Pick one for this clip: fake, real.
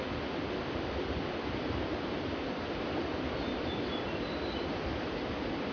real